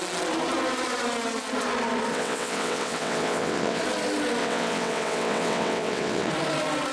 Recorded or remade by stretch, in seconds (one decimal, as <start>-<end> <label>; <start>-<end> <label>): 0.0-2.1 recorded; 2.1-3.8 remade; 3.8-4.4 recorded; 4.4-6.3 remade; 6.3-6.9 recorded